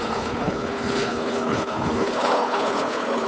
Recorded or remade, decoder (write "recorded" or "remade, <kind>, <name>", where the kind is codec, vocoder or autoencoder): remade, codec, HILCodec